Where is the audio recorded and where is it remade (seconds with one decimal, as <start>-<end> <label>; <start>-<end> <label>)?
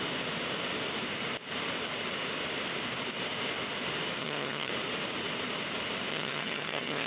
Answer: 0.0-4.2 recorded; 4.2-4.7 remade; 4.7-6.1 recorded; 6.1-7.1 remade